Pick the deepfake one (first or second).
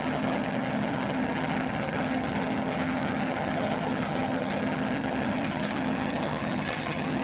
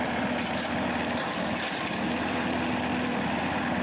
first